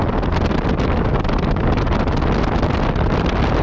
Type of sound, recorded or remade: recorded